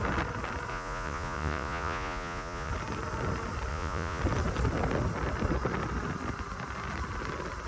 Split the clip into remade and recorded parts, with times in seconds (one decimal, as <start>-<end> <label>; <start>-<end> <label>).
0.0-0.7 recorded; 0.7-2.7 remade; 2.7-3.7 recorded; 3.7-4.2 remade; 4.2-7.7 recorded